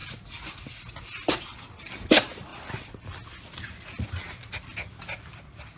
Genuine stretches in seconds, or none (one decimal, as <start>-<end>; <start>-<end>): 0.0-2.5; 4.1-5.8